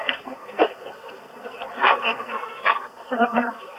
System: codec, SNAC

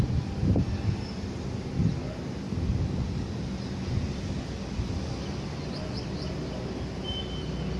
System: none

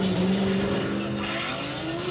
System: none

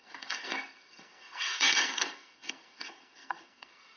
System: codec, SNAC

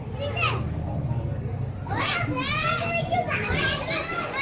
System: none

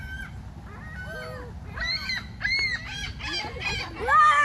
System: none